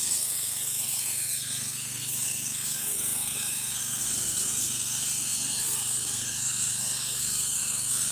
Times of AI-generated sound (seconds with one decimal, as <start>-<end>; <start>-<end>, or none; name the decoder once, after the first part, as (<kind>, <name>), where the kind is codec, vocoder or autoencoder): 0.0-8.1 (codec, SNAC)